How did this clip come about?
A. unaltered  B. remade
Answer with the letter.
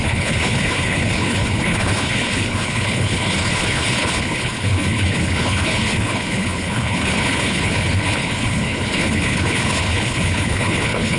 B